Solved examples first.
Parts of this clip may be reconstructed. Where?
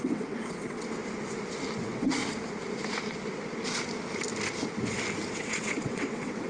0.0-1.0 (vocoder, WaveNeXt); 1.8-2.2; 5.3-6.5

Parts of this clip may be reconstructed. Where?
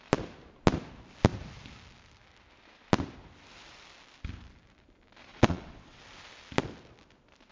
5.3-6.0 (vocoder, WaveNeXt)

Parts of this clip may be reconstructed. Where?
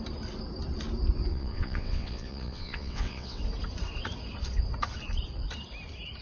1.3-3.4 (vocoder, WaveNeXt)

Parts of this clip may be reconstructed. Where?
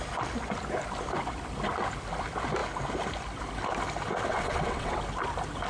4.3-5.0 (vocoder, WaveNeXt)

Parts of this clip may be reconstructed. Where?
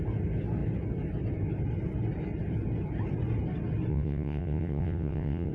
3.9-5.5 (vocoder, WaveNeXt)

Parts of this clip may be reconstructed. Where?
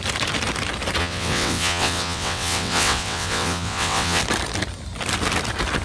1.0-4.2 (vocoder, WaveNeXt)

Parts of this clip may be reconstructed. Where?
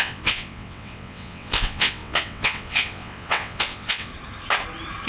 0.0-4.1 (vocoder, WaveNeXt)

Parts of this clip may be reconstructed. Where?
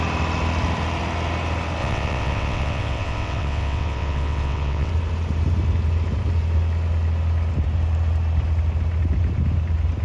1.8-4.9 (vocoder, WaveNeXt)